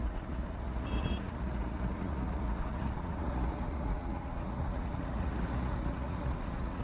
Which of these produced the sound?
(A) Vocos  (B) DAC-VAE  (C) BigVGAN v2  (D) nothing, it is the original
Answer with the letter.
A